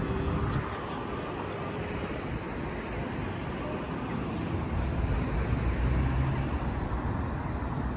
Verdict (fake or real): real